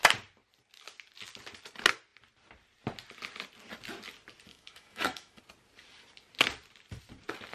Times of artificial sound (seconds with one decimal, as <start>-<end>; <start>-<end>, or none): 4.5-5.4